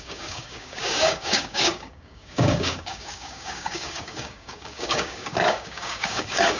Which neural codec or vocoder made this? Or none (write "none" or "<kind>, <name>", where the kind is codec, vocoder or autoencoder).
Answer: codec, DAC